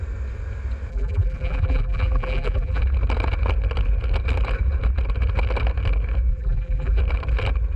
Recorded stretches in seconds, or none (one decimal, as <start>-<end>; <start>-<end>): 0.0-0.9; 2.8-6.3; 7.0-7.8